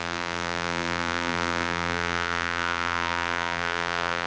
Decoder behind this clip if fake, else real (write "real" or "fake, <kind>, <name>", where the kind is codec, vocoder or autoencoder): fake, vocoder, BigVGAN v2